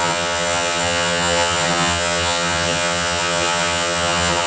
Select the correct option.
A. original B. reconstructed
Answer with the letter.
B